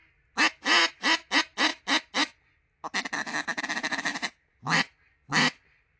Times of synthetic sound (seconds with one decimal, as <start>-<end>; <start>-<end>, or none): 4.1-6.0